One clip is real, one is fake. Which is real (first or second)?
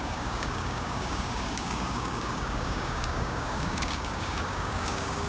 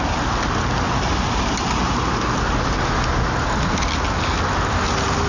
second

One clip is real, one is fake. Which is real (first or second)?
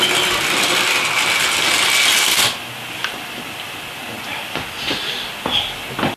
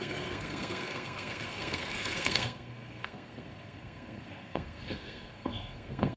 first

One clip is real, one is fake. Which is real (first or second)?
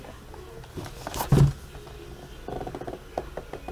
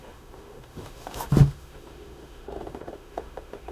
first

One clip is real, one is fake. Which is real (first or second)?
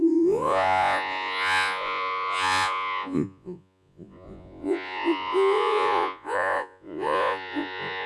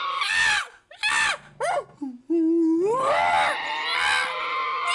second